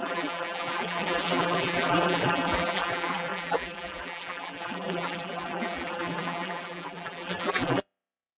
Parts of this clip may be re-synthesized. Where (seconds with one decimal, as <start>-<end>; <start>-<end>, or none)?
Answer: 0.0-8.4